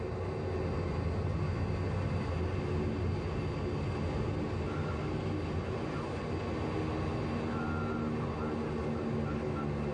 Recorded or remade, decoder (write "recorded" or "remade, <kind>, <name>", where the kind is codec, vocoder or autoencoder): recorded